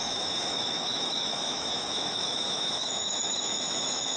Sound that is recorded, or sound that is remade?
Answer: remade